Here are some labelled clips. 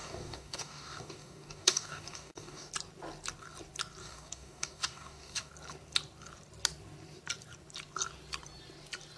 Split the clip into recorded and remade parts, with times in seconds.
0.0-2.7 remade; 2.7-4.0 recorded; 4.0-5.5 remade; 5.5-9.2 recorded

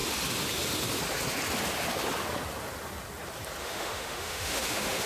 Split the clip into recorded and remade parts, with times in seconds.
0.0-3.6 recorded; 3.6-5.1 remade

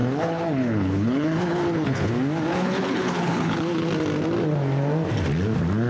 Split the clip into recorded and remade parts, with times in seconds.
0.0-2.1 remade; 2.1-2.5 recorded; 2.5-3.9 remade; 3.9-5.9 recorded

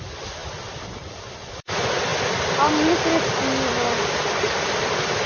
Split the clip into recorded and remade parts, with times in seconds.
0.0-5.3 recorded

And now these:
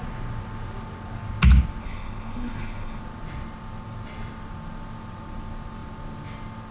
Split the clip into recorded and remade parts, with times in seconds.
0.0-1.8 recorded; 1.8-3.0 remade; 3.0-6.7 recorded

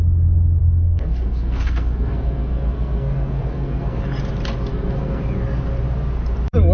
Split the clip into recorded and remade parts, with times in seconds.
0.0-0.6 recorded; 0.6-4.0 remade; 4.0-4.7 recorded; 4.7-5.2 remade; 5.2-6.7 recorded

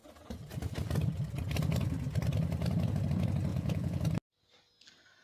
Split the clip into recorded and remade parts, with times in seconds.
0.0-3.5 recorded; 3.5-4.0 remade; 4.0-5.2 recorded

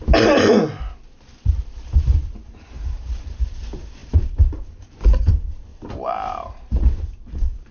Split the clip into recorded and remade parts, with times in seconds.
0.0-2.2 recorded; 2.2-3.5 remade; 3.5-4.0 recorded; 4.0-4.9 remade; 4.9-5.7 recorded; 5.7-7.0 remade; 7.0-7.7 recorded